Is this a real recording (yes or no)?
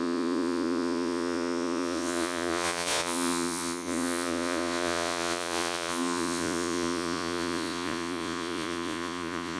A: no